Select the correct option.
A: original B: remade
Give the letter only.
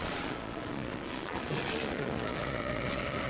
B